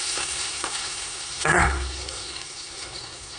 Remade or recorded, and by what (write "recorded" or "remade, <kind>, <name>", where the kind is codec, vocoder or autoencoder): remade, codec, SNAC